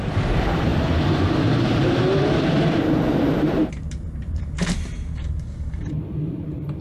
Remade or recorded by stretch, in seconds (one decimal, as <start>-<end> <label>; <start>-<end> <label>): 0.0-6.8 remade